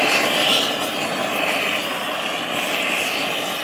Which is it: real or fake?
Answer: real